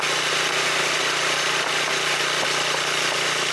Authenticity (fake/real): real